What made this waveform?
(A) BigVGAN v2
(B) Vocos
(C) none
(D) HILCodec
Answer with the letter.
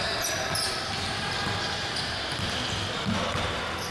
C